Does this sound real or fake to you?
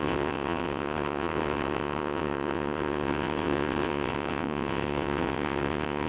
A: fake